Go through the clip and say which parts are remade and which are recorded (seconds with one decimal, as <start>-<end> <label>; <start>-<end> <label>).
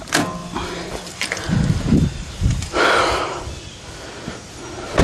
0.0-0.4 recorded; 0.4-3.4 remade; 3.4-5.0 recorded